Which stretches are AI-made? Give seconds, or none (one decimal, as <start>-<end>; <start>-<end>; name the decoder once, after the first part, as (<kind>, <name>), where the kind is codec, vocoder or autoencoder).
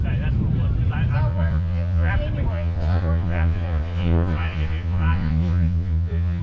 1.3-2.1 (vocoder, Vocos); 2.5-6.4